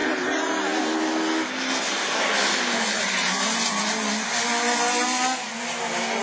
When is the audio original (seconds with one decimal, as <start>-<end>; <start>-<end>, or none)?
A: 0.0-6.2

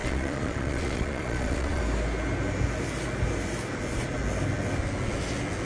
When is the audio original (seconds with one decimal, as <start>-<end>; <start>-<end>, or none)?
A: 1.8-5.6

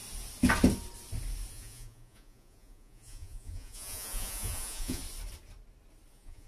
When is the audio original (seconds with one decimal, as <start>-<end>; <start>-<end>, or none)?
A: 0.0-1.5; 5.0-6.1

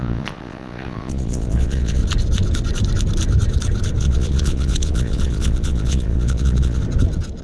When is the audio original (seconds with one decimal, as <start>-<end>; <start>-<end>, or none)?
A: 2.0-4.0; 6.8-7.4

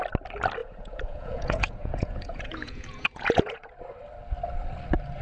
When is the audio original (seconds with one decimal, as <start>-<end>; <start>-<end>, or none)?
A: 0.0-0.6; 3.7-5.2